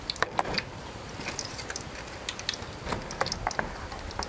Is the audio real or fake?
real